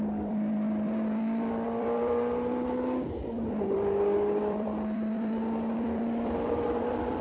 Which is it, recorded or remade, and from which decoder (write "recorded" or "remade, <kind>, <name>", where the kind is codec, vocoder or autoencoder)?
remade, vocoder, BigVGAN v2